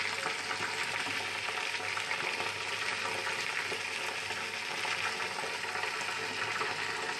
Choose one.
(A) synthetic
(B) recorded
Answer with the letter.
B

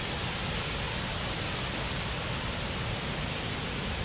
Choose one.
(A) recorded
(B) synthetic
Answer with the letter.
A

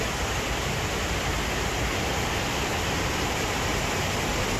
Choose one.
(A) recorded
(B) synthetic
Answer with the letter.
A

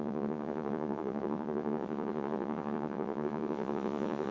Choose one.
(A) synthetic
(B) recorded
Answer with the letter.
A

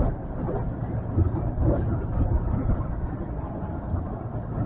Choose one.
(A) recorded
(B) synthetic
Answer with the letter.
A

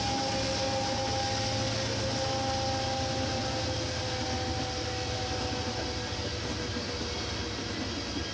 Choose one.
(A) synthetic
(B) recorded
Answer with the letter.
B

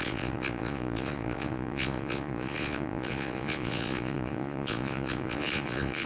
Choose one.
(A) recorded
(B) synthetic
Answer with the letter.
B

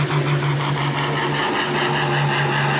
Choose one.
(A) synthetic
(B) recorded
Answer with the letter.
B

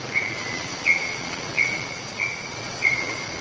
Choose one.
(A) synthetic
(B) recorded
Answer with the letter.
A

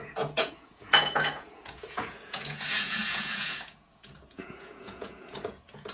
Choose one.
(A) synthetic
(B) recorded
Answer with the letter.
A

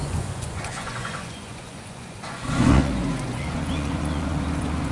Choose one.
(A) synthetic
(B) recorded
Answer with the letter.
A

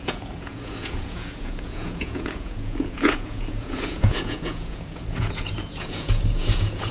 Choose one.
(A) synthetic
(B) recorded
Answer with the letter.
A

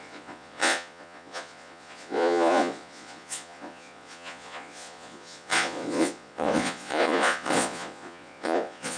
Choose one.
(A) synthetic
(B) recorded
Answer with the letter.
A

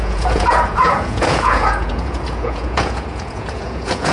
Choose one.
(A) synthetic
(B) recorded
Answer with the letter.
A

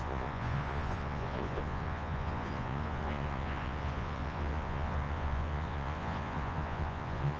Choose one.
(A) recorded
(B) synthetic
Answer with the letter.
B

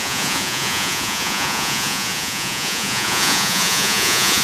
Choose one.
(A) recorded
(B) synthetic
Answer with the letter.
B